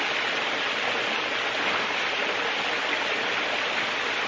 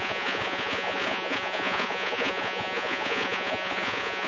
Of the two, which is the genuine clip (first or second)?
first